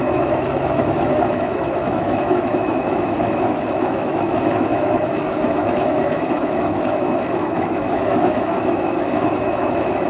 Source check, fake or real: fake